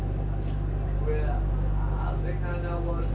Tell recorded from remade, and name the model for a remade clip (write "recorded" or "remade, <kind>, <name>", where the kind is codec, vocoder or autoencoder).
recorded